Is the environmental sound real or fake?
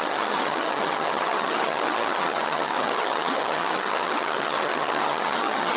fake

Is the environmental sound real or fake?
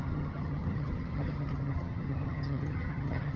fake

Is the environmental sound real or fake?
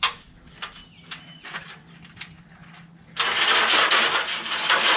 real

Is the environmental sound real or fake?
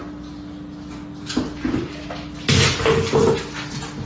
real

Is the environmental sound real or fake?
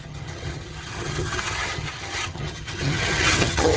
fake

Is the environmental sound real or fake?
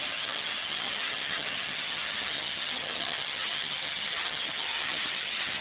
fake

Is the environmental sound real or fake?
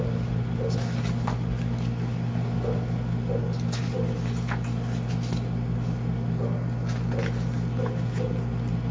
real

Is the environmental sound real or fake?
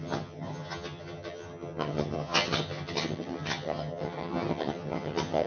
fake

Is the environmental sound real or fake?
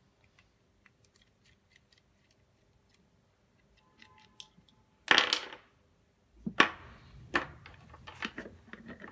real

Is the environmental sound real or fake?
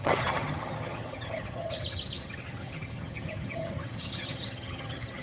fake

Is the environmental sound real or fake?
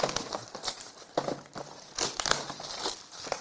real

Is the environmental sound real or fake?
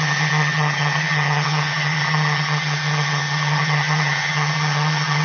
fake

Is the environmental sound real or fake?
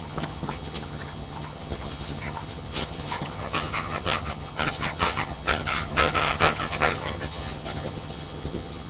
fake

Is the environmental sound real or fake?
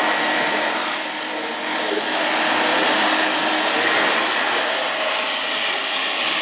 real